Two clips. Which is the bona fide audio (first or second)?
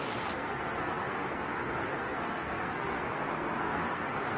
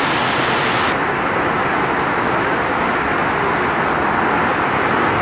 second